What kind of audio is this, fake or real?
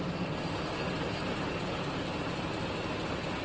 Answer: real